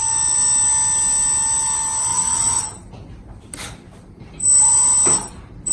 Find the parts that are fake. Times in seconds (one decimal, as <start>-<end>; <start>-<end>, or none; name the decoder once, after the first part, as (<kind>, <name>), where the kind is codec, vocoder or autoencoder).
2.1-2.6 (vocoder, BigVGAN v2)